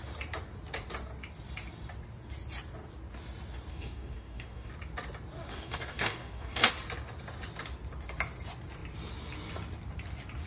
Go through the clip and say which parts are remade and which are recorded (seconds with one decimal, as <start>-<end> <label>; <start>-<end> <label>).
0.0-3.7 recorded; 3.7-4.7 remade; 4.7-5.5 recorded; 5.5-6.7 remade; 6.7-10.5 recorded